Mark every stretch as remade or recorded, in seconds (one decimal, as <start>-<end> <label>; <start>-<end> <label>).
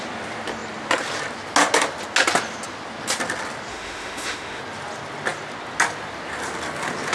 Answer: 0.0-3.7 recorded; 3.7-4.6 remade; 4.6-7.1 recorded